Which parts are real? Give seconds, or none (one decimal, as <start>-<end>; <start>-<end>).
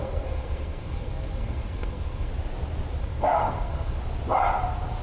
2.3-3.0; 4.0-5.0